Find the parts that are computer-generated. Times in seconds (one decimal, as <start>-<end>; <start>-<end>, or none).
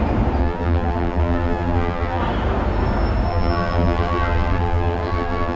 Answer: 0.4-2.2; 3.3-5.6